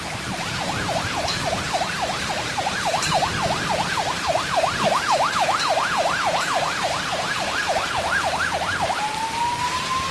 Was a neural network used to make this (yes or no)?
yes